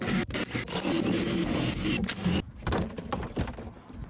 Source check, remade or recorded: recorded